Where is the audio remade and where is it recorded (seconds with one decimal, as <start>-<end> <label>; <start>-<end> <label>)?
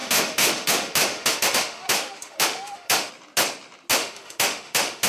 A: 0.0-3.1 remade; 3.1-3.9 recorded; 3.9-5.1 remade